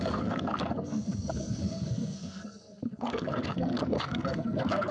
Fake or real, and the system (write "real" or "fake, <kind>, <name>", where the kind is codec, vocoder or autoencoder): fake, codec, SNAC